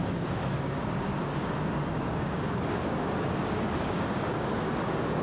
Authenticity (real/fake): fake